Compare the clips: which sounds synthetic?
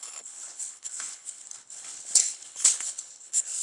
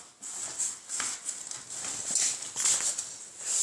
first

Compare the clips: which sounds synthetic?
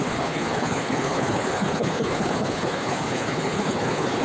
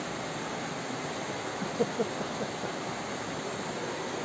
first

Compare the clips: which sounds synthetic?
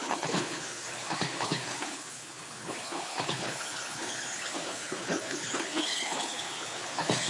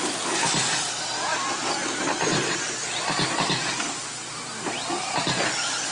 first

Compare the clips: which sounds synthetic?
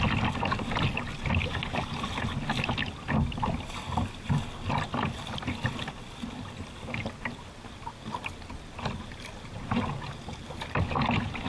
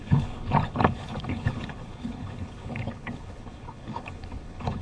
second